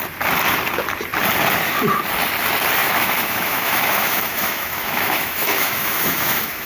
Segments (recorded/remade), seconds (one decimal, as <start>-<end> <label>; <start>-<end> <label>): 0.0-2.8 recorded; 2.8-6.7 remade